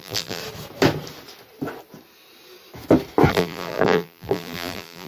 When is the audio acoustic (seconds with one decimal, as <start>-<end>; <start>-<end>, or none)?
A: 0.4-3.3